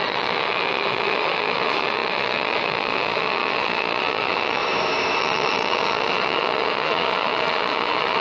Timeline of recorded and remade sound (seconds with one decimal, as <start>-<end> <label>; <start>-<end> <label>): 0.0-4.6 remade; 4.6-5.2 recorded; 5.2-8.2 remade